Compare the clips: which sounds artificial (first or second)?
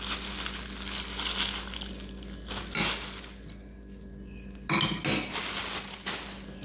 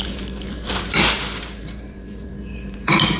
second